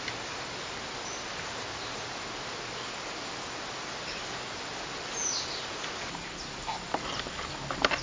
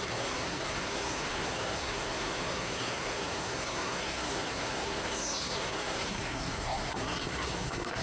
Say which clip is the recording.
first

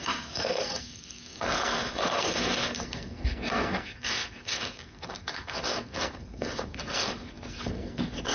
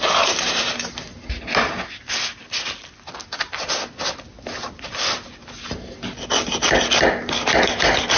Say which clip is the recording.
second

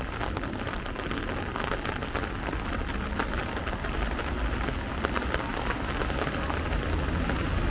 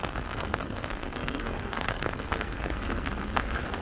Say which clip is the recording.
first